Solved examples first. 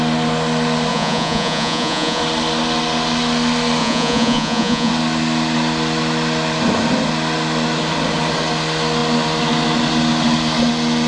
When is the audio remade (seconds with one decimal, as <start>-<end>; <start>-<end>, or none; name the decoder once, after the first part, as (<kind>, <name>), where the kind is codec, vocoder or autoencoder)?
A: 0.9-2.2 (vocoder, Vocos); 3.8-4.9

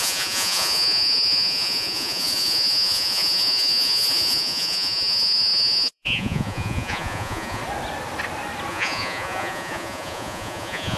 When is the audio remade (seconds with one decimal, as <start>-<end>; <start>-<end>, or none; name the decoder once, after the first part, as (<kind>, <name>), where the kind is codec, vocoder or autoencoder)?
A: 0.0-7.6 (vocoder, Vocos); 8.7-11.0

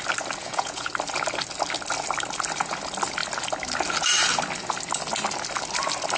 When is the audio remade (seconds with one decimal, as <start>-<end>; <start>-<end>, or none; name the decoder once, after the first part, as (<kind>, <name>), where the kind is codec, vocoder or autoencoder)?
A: 0.4-0.9 (vocoder, Vocos)

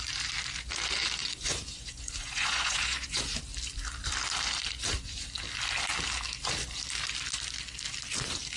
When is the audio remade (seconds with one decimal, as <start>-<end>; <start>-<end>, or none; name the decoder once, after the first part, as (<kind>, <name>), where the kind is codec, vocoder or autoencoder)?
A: 1.2-3.2 (vocoder, Vocos)

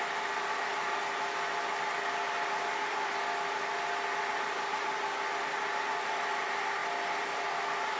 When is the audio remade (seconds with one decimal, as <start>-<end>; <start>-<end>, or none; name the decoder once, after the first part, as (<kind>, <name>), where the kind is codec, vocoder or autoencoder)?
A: none

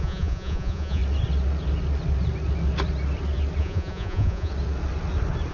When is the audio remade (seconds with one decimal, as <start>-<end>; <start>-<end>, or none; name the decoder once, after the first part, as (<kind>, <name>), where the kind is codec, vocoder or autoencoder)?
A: 0.0-1.0 (vocoder, Vocos); 3.6-4.5

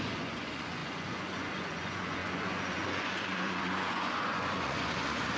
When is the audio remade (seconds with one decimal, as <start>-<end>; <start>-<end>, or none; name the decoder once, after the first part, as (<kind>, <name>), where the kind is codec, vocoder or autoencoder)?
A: 0.0-5.4 (vocoder, Vocos)